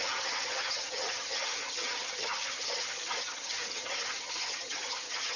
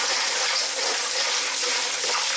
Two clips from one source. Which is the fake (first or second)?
first